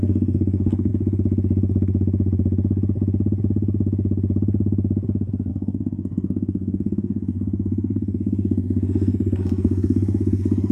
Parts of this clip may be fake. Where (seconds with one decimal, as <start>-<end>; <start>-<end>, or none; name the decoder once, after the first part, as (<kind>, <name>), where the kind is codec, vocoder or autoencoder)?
0.0-0.9 (codec, SNAC); 5.5-10.7